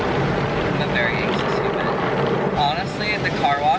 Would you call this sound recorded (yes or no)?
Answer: yes